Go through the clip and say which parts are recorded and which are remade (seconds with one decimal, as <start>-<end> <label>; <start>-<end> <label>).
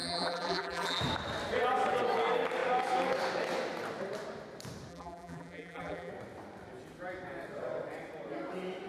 0.0-1.0 remade; 1.0-4.9 recorded; 4.9-6.1 remade; 6.1-8.9 recorded